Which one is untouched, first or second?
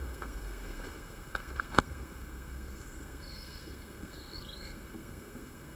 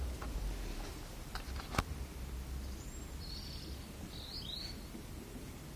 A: second